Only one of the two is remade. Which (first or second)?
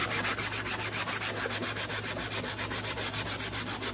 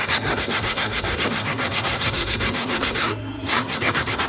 second